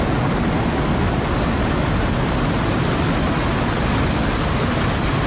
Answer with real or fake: real